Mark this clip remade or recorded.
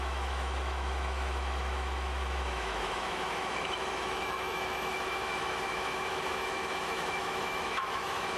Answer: remade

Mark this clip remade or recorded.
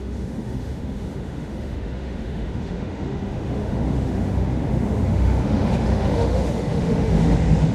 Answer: remade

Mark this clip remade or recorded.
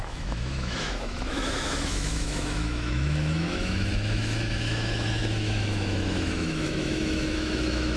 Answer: remade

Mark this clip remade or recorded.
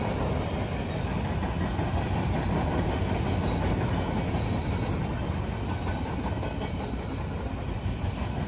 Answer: recorded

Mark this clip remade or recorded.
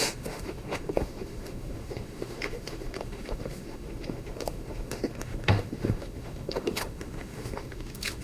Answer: remade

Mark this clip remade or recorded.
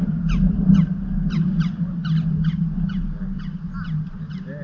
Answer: recorded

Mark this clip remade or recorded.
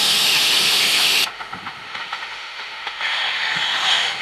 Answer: remade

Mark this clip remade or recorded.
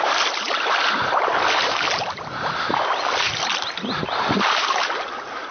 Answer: recorded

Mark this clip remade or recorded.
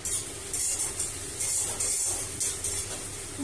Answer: recorded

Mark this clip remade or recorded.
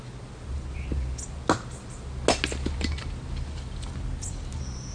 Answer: recorded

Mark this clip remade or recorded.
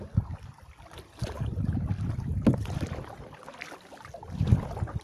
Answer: recorded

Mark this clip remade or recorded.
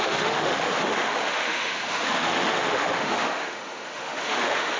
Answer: remade